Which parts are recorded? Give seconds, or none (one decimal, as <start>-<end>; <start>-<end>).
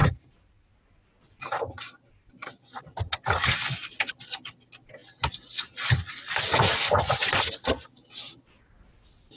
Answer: 0.0-9.4